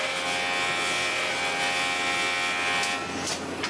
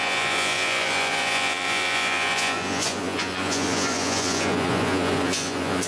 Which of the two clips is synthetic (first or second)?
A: second